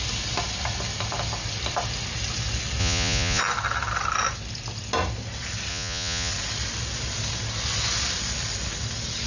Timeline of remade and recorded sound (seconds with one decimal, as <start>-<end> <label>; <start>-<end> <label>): 0.0-2.8 recorded; 2.8-3.4 remade; 3.4-5.7 recorded; 5.7-6.3 remade; 6.3-9.3 recorded